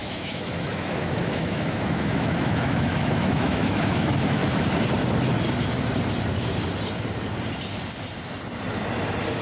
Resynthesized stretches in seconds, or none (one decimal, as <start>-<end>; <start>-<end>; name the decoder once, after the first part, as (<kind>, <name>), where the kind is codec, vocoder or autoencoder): 0.0-4.4 (autoencoder, DAC-VAE)